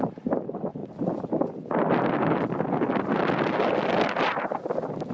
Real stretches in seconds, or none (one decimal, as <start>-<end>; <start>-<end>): 0.0-5.1